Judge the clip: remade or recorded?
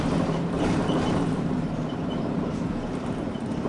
remade